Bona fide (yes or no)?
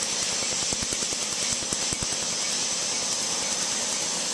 yes